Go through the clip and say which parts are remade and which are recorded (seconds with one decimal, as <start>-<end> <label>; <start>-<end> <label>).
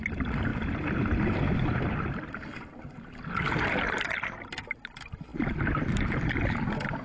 0.0-7.0 recorded